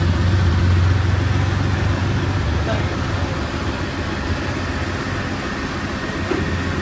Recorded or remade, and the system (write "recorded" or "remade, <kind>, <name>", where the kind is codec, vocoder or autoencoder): recorded